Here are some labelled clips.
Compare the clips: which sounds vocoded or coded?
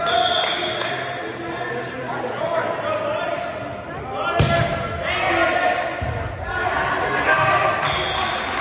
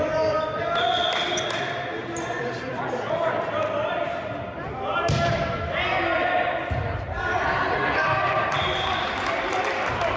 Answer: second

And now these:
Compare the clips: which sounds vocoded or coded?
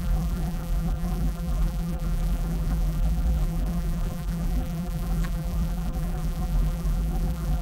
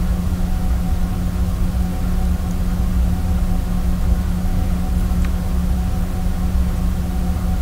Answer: first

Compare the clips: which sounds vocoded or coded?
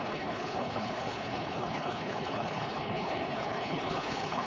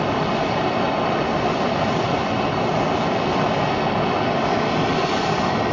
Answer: first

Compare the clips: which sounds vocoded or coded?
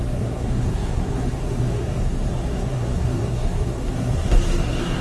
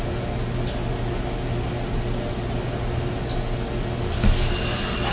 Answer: first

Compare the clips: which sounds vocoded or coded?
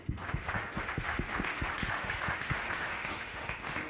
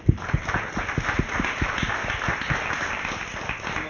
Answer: first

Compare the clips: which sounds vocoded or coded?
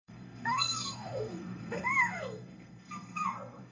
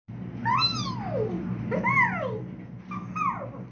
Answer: first